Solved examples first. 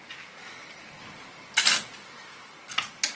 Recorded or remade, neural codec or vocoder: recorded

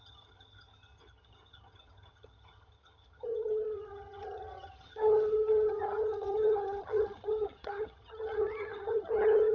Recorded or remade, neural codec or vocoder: remade, vocoder, HiFi-GAN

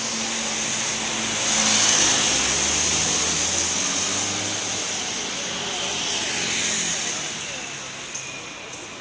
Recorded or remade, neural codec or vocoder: recorded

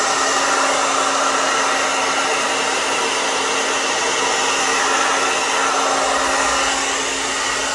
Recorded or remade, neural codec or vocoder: recorded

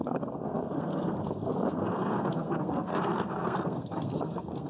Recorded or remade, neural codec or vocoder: remade, codec, SNAC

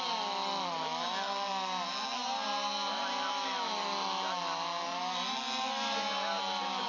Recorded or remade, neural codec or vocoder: recorded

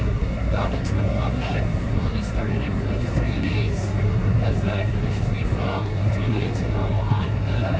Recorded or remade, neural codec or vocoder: remade, codec, SNAC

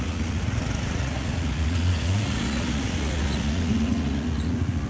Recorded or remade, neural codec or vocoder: remade, vocoder, Vocos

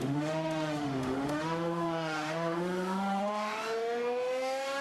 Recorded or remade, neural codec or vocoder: remade, autoencoder, DAC-VAE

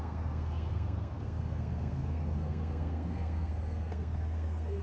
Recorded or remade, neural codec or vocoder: remade, codec, SNAC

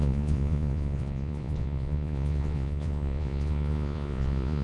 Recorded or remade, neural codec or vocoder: remade, vocoder, Vocos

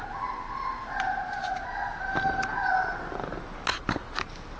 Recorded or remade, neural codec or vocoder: recorded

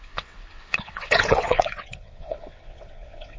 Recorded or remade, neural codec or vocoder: remade, vocoder, WaveNeXt